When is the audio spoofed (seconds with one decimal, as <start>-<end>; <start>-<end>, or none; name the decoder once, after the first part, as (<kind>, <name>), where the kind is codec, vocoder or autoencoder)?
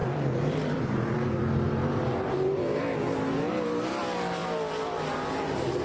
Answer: 0.0-2.8 (vocoder, BigVGAN v2)